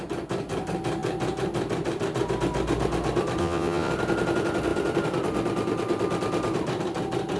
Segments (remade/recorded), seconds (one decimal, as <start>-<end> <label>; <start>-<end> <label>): 0.0-3.4 recorded; 3.4-3.9 remade; 3.9-7.4 recorded